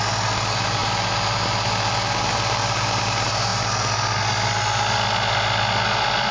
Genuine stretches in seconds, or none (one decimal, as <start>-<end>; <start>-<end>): 0.0-6.3